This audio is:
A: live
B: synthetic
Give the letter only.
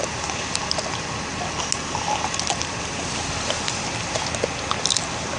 A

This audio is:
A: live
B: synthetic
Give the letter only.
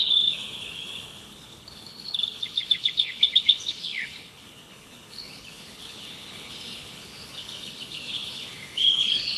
B